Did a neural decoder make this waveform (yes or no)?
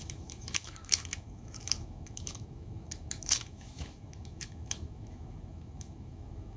yes